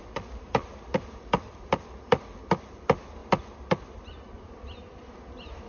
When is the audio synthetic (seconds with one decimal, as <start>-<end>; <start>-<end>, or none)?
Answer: none